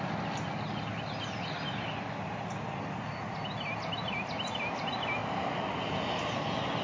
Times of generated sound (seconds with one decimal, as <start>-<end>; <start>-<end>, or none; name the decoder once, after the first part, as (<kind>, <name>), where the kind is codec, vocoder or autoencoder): none